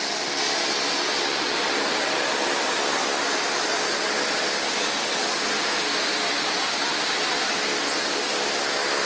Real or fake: real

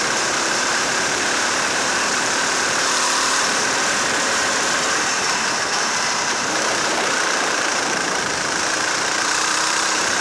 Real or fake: fake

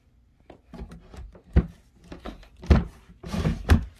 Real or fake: real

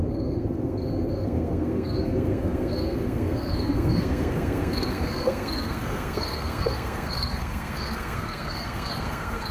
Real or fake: fake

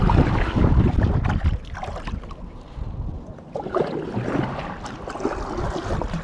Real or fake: real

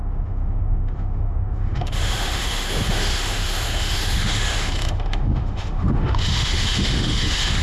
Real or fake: fake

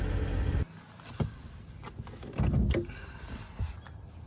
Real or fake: real